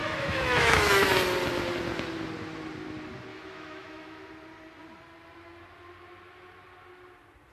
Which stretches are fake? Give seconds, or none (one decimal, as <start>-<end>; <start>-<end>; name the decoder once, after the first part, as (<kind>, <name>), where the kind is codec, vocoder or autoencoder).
0.0-1.1 (autoencoder, DAC-VAE); 3.3-4.3